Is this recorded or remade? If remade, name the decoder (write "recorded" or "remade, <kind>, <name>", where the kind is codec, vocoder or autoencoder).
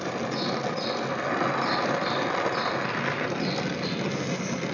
recorded